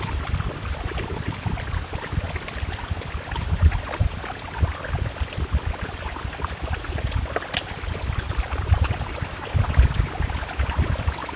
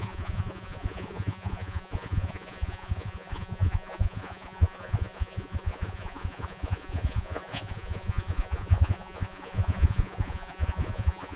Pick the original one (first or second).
first